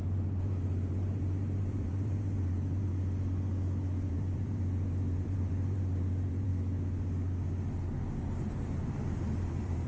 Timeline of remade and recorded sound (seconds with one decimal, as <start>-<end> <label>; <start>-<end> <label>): 0.0-2.9 remade; 2.9-4.1 recorded; 4.1-6.5 remade; 6.5-9.2 recorded; 9.2-9.9 remade